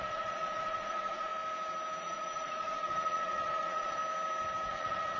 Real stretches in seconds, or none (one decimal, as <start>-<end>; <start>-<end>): 1.3-2.0; 4.0-4.7